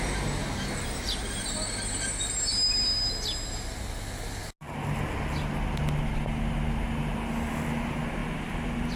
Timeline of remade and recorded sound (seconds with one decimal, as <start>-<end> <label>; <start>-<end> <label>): 0.0-9.0 recorded